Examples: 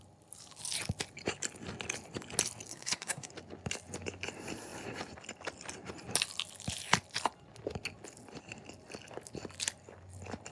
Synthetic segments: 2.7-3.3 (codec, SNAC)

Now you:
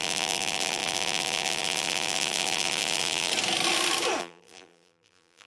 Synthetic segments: 0.0-3.3 (vocoder, BigVGAN v2); 4.2-5.5

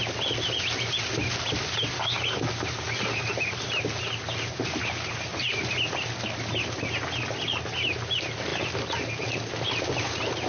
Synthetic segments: 5.3-5.9 (vocoder, BigVGAN v2)

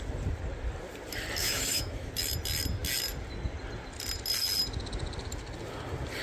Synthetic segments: 1.4-2.1 (autoencoder, DAC-VAE)

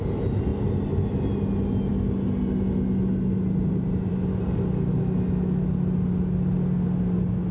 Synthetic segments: none

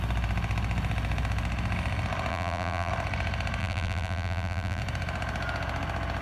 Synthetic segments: 2.3-2.9 (vocoder, BigVGAN v2); 3.6-4.8

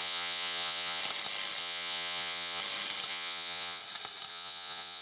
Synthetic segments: 0.0-1.0 (vocoder, Vocos); 1.6-2.6; 3.1-3.8; 4.3-5.0